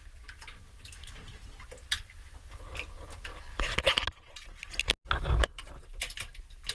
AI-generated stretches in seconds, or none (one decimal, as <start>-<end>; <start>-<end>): none